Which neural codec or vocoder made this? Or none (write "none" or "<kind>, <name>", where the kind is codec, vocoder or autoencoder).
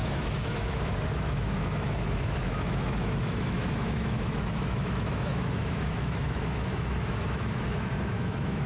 autoencoder, DAC-VAE